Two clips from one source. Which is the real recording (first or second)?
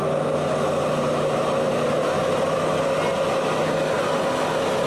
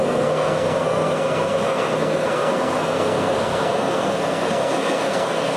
first